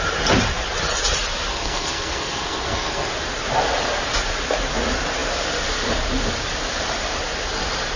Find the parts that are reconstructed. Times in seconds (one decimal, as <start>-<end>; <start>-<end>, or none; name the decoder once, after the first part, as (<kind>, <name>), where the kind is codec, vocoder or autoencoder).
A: 1.5-3.1 (codec, SNAC)